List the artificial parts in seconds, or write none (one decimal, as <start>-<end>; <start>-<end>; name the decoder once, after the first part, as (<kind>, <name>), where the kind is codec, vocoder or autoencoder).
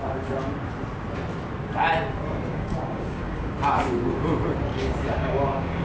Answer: 2.5-3.5 (codec, DAC); 4.7-5.8